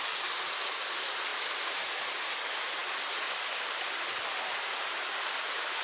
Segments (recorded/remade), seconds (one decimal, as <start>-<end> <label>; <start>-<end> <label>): 0.0-5.8 recorded